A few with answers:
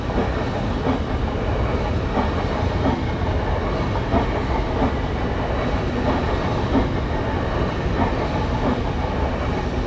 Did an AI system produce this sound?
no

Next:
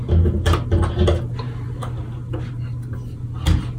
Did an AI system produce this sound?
no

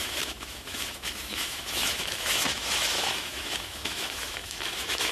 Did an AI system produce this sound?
yes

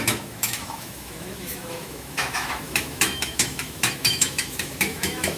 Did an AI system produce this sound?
yes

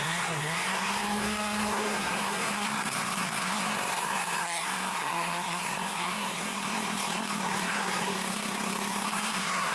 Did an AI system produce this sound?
yes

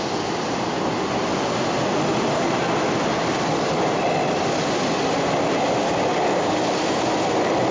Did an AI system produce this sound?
no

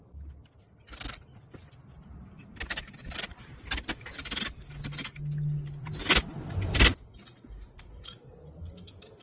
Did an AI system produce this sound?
no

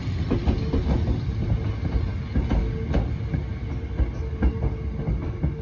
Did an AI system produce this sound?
no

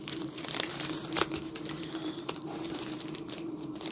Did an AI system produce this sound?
yes